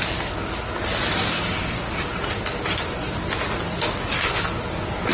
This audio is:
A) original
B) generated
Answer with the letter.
A